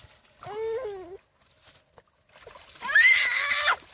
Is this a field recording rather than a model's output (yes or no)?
yes